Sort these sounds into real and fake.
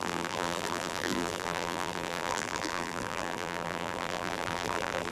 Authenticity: fake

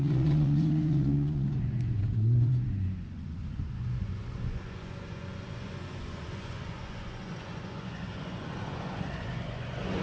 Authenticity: fake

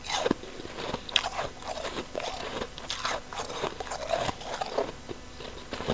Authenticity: real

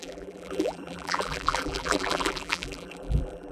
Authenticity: fake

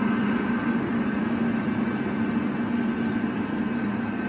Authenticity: real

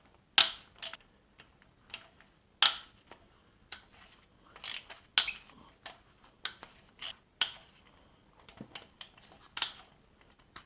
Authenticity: real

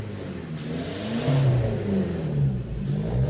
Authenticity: real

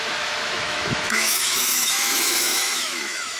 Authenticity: fake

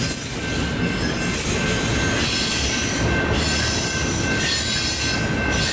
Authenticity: real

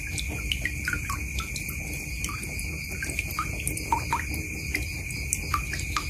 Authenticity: real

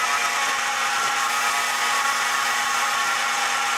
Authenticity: real